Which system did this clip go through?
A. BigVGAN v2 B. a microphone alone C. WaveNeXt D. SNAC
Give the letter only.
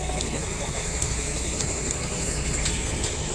D